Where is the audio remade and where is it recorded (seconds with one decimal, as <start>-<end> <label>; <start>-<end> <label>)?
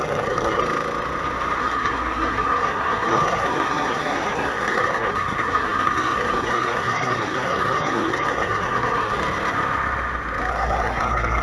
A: 0.0-0.6 remade; 0.6-1.6 recorded; 1.6-9.2 remade; 9.2-10.5 recorded; 10.5-11.4 remade